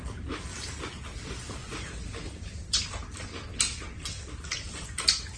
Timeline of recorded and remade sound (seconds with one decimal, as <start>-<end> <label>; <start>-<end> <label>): 0.0-1.6 recorded; 1.6-2.8 remade; 2.8-5.4 recorded